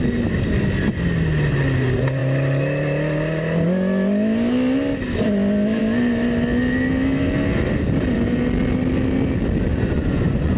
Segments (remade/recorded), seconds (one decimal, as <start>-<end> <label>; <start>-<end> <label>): 0.0-9.7 recorded; 9.7-10.6 remade